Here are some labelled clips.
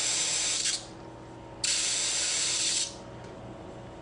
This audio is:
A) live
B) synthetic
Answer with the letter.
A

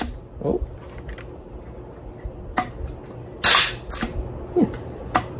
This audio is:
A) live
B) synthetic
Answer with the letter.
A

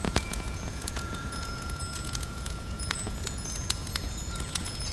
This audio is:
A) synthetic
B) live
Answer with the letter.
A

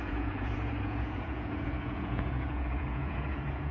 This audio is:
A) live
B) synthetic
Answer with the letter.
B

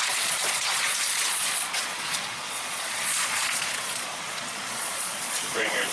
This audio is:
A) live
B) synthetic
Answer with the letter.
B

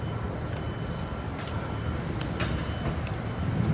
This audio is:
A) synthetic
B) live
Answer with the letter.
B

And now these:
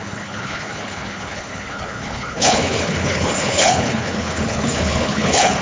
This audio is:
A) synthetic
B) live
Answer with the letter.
A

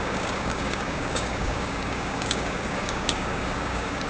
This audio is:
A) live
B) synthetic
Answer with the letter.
B